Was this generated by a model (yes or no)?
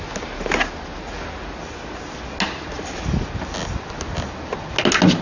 no